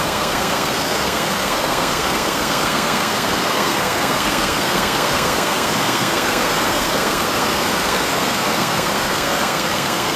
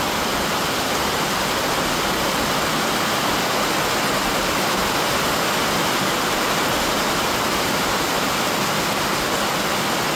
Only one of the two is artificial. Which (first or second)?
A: first